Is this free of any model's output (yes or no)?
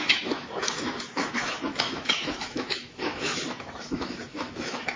no